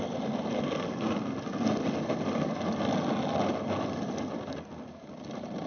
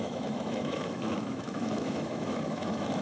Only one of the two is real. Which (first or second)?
first